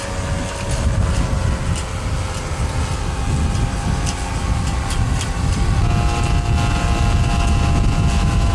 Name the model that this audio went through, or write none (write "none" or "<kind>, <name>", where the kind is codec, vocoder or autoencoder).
none